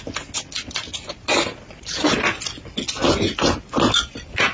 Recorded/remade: recorded